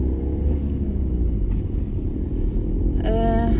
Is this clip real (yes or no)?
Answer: yes